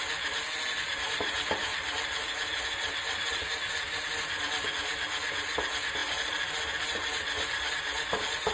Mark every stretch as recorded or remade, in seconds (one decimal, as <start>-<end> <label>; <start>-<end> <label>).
0.0-8.5 recorded